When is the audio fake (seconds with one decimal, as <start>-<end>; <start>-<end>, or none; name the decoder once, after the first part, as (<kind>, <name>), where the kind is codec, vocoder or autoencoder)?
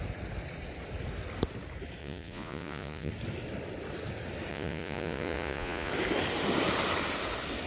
2.0-3.1 (vocoder, Vocos); 4.5-5.9